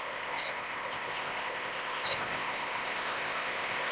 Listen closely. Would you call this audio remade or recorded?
remade